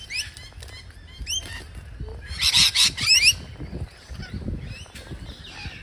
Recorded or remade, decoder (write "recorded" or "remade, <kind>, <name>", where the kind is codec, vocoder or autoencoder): recorded